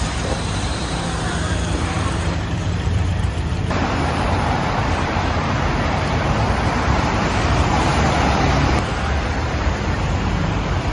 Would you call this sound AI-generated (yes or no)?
yes